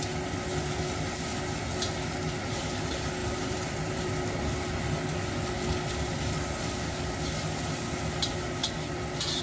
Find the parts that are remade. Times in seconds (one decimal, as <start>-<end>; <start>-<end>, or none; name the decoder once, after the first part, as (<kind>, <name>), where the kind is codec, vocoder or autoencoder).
3.2-4.1 (vocoder, BigVGAN v2)